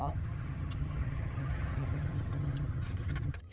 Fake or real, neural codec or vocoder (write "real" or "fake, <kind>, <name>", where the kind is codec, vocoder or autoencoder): fake, vocoder, HiFi-GAN